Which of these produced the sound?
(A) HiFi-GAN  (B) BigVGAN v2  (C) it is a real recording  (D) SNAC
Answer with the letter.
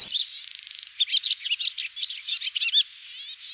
C